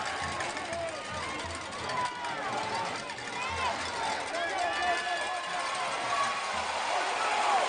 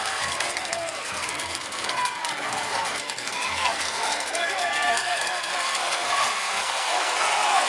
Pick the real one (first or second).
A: first